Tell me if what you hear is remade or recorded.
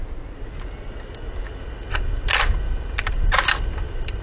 recorded